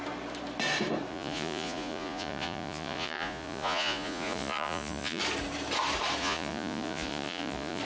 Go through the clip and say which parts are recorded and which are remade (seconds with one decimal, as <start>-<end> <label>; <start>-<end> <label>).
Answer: 0.0-1.1 recorded; 1.1-5.2 remade; 5.2-6.2 recorded; 6.2-7.8 remade